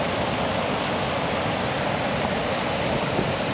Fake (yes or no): no